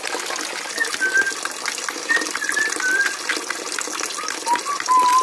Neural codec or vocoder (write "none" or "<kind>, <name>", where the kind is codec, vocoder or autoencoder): none